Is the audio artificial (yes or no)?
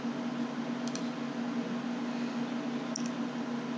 no